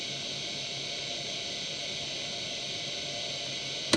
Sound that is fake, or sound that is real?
real